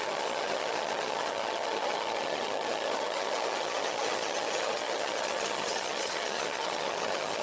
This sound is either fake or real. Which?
fake